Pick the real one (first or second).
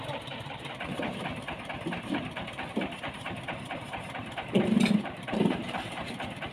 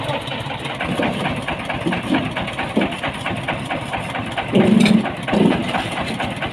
second